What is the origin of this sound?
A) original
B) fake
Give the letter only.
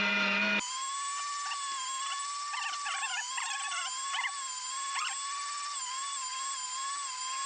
A